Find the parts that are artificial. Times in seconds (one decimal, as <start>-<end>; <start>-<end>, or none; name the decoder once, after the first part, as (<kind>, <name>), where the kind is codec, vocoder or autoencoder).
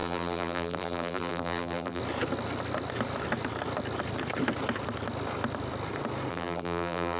0.0-2.0 (vocoder, BigVGAN v2); 6.3-7.2